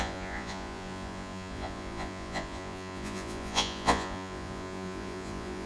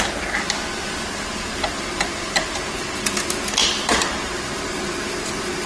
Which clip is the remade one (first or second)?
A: first